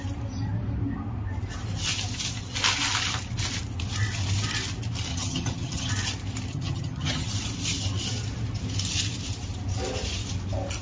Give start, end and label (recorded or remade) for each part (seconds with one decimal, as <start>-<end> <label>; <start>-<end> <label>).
0.0-5.1 recorded; 5.1-5.9 remade; 5.9-6.5 recorded; 6.5-7.3 remade; 7.3-10.8 recorded